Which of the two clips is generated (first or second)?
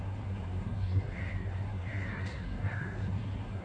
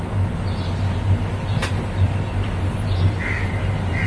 first